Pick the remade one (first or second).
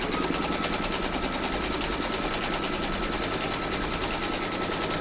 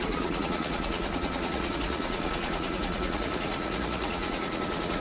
second